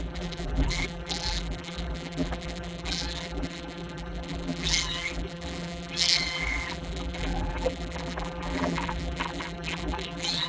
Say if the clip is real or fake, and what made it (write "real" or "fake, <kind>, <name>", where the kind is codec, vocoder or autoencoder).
fake, vocoder, BigVGAN v2